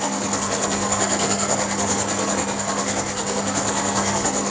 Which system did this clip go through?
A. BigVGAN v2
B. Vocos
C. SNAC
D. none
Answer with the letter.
C